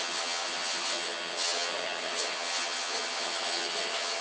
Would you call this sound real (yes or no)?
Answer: no